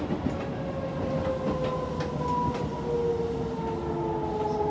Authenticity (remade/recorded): recorded